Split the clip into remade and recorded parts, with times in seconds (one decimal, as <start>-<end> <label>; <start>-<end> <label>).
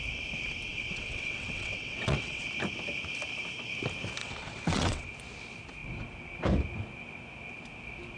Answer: 0.0-0.7 recorded; 0.7-2.4 remade; 2.4-4.2 recorded; 4.2-5.1 remade; 5.1-8.2 recorded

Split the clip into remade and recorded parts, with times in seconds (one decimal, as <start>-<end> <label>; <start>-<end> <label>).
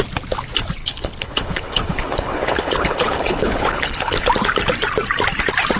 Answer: 0.0-0.8 recorded; 0.8-4.3 remade; 4.3-5.8 recorded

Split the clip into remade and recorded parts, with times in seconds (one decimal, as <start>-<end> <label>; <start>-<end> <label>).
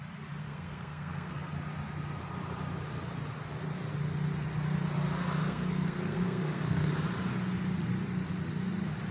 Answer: 0.0-0.4 recorded; 0.4-1.5 remade; 1.5-5.4 recorded; 5.4-6.9 remade; 6.9-9.1 recorded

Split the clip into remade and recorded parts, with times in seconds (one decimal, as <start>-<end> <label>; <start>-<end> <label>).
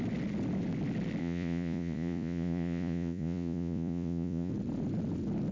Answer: 0.0-1.2 recorded; 1.2-4.5 remade; 4.5-5.5 recorded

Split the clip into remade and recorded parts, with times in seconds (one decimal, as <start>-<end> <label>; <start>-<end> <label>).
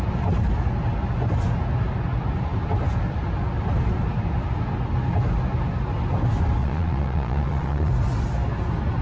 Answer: 0.0-6.6 recorded; 6.6-7.9 remade; 7.9-9.0 recorded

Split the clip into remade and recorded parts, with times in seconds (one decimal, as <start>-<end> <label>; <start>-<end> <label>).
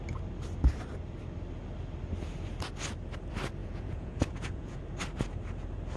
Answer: 0.0-3.6 recorded; 3.6-4.8 remade; 4.8-6.0 recorded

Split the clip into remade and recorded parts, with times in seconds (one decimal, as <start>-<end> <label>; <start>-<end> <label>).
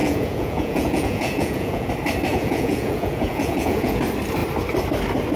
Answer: 0.0-1.9 remade; 1.9-2.3 recorded; 2.3-4.0 remade; 4.0-5.4 recorded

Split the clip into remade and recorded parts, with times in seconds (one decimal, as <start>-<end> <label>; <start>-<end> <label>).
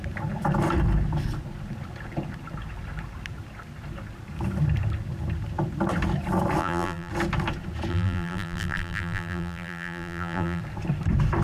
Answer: 0.0-6.6 recorded; 6.6-7.1 remade; 7.1-7.9 recorded; 7.9-10.6 remade; 10.6-11.4 recorded